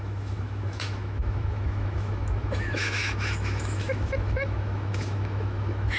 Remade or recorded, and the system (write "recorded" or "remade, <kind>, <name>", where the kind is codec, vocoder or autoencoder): remade, autoencoder, DAC-VAE